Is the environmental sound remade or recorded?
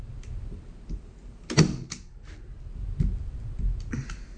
recorded